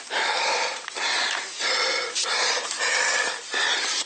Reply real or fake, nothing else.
real